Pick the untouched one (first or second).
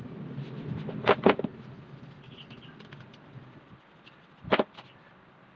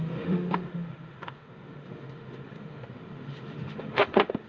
first